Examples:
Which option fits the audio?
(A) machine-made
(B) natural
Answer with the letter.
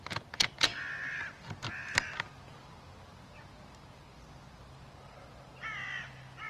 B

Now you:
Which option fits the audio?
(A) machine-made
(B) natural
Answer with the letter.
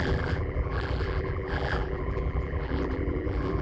A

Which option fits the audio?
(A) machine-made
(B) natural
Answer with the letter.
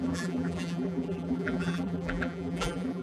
A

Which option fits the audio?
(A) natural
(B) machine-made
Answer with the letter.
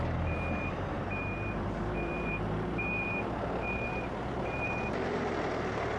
B